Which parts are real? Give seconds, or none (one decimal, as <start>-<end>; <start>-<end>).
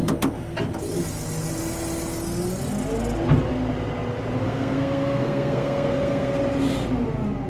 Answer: 0.0-4.4; 6.4-7.5